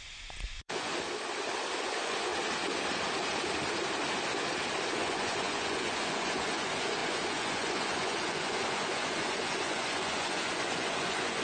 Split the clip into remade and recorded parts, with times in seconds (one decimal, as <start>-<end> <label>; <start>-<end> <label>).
0.0-0.9 remade; 0.9-1.8 recorded; 1.8-2.3 remade; 2.3-4.9 recorded; 4.9-11.4 remade